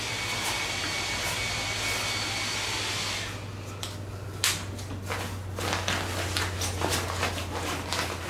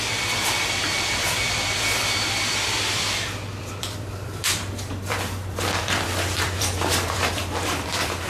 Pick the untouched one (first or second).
first